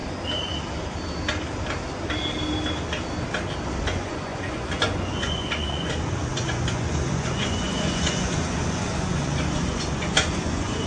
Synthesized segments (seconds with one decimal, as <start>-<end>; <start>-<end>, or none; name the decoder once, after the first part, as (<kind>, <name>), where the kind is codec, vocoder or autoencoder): 3.8-10.9 (vocoder, Vocos)

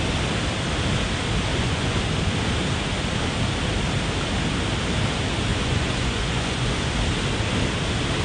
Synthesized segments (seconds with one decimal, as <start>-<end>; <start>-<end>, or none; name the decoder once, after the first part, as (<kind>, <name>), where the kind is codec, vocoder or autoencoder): 1.5-2.0 (vocoder, Vocos); 5.5-6.9

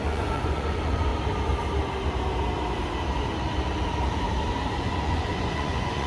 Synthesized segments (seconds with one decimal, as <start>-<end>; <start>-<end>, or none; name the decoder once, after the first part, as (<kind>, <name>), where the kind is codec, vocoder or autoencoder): 0.0-1.1 (vocoder, Vocos); 4.8-6.1

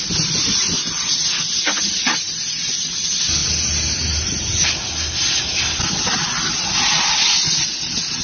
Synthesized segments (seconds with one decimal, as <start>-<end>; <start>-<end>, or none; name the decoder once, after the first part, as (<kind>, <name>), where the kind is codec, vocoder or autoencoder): none

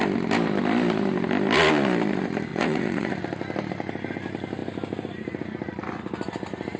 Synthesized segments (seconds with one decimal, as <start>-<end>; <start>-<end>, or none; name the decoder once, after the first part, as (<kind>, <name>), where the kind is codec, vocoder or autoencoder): 2.5-3.2 (vocoder, Vocos)